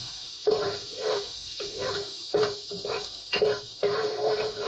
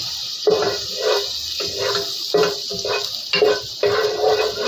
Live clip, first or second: second